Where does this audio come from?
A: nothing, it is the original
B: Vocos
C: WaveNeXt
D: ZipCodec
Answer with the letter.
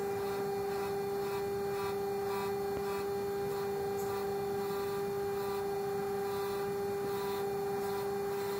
A